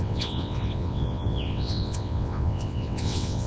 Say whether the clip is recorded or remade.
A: remade